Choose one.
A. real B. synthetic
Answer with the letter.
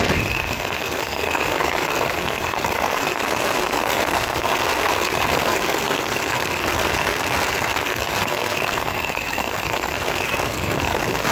B